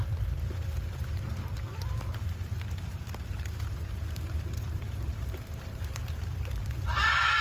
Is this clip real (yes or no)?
no